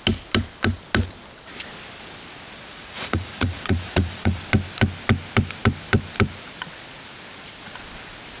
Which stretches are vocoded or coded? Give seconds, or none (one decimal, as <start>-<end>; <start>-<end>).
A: 2.7-4.4